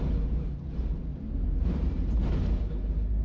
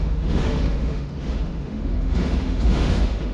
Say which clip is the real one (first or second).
first